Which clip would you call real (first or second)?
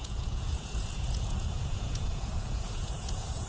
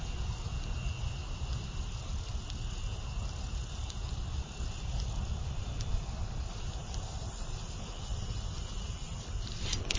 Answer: second